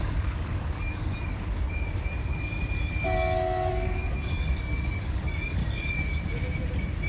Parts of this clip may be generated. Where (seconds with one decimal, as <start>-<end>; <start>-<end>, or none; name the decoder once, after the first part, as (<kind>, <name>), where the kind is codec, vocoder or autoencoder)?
0.0-1.1 (codec, DAC); 3.7-5.6